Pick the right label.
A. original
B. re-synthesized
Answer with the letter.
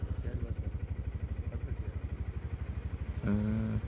A